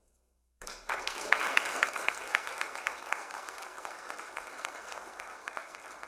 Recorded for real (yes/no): no